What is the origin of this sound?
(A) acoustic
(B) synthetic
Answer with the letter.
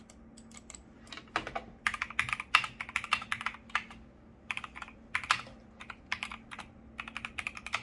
A